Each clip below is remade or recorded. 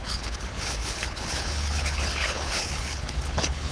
remade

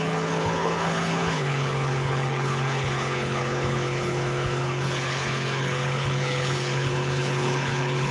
remade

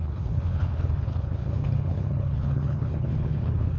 remade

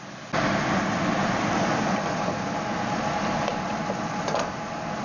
recorded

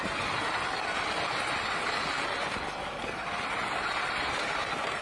recorded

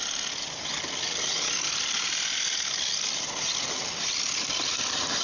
recorded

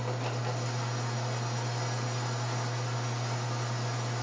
recorded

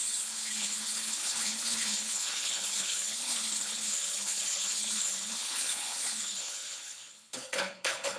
remade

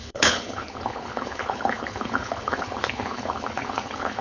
remade